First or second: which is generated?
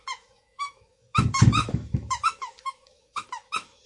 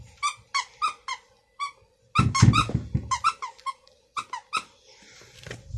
first